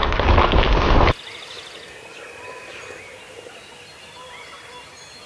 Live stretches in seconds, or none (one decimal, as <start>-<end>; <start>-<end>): 0.0-5.3